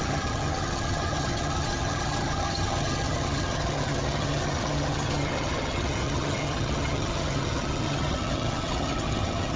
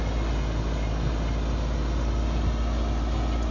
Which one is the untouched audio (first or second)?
second